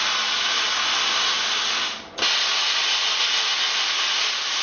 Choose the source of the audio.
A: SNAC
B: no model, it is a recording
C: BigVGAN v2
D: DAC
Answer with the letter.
B